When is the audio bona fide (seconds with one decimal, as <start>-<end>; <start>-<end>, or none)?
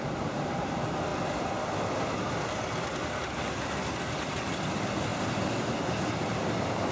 0.0-6.9